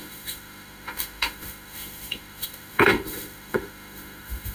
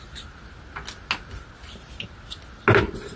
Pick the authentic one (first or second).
second